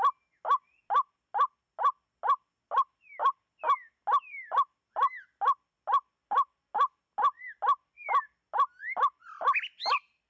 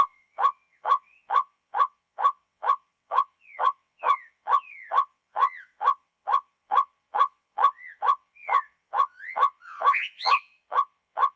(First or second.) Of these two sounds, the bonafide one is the first